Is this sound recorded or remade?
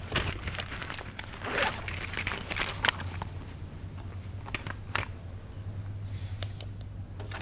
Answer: recorded